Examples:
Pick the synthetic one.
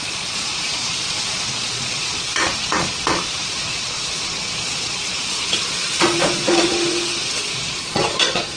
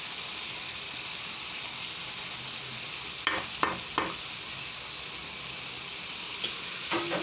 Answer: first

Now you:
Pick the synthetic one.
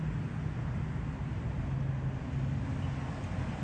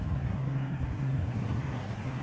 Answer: second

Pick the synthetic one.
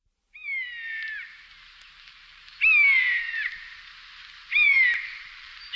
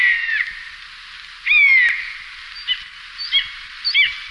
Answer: first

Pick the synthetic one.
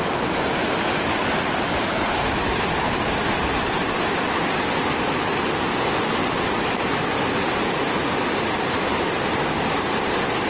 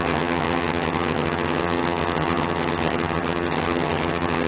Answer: second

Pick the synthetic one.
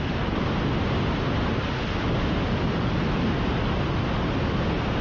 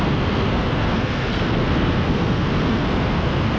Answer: second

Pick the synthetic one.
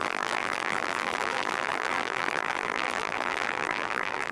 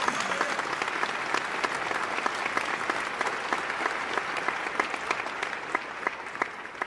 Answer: first